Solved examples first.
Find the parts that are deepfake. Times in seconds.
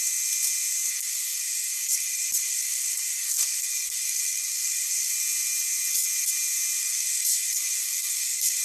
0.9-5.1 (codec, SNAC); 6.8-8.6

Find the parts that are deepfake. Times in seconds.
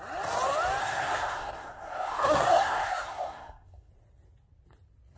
0.8-3.9 (codec, SNAC)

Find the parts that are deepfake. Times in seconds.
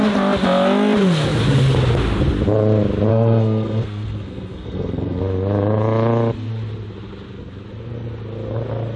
3.1-5.2 (codec, SNAC)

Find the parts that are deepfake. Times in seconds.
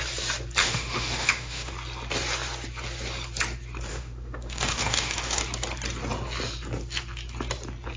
0.6-1.7 (autoencoder, DAC-VAE); 3.9-5.4